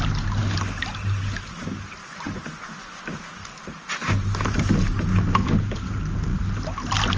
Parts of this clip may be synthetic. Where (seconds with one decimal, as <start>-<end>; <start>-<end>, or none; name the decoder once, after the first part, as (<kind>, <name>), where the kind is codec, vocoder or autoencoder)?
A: 2.0-3.0 (vocoder, Vocos)